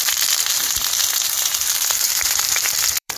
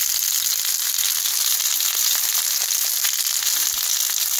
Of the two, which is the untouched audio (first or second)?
second